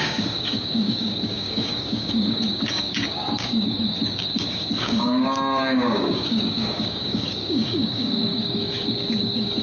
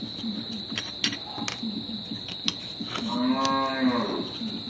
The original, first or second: second